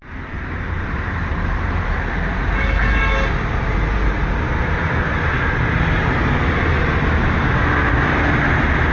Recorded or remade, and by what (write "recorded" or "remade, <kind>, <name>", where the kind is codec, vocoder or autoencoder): recorded